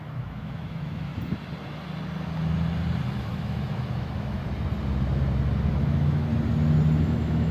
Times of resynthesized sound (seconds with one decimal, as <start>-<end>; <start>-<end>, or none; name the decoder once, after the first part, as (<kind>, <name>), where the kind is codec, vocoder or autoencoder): 0.0-1.1 (autoencoder, DAC-VAE); 3.2-4.4; 5.7-6.3; 7.0-7.5